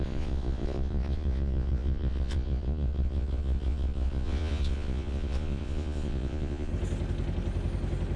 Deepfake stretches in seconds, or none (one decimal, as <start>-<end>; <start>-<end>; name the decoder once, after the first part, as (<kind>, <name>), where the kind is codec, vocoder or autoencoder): 0.0-6.7 (vocoder, Vocos)